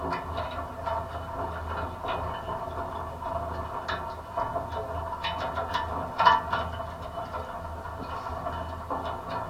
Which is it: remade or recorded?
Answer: recorded